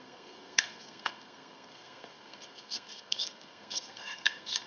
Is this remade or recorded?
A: remade